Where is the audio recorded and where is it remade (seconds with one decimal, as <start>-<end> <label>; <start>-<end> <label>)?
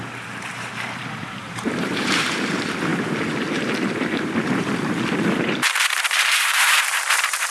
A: 0.0-7.5 remade